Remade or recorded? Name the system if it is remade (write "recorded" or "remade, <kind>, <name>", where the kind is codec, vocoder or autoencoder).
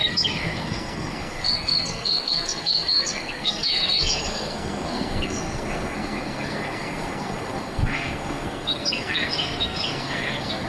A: remade, codec, SNAC